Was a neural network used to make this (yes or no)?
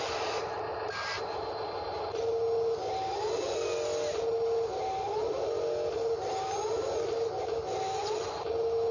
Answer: no